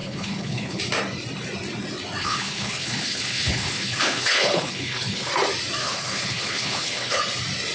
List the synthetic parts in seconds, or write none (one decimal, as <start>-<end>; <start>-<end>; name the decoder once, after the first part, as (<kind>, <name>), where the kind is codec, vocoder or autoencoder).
0.0-0.8 (codec, HILCodec); 2.2-5.3; 5.8-7.2